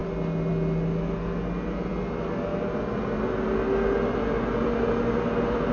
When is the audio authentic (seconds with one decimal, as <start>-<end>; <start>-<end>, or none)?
0.0-5.7